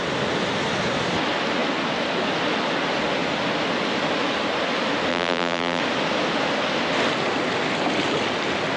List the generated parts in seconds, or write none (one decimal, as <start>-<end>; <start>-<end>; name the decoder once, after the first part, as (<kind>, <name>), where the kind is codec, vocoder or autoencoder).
5.1-5.8 (vocoder, BigVGAN v2)